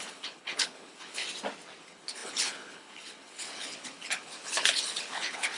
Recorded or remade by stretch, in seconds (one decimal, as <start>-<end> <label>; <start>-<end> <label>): 0.0-1.2 remade; 1.2-1.8 recorded; 1.8-5.6 remade